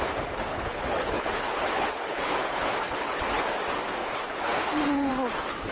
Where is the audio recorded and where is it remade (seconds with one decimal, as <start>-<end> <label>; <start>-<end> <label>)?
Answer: 0.0-0.5 recorded; 0.5-3.4 remade; 3.4-4.0 recorded; 4.0-5.1 remade; 5.1-5.7 recorded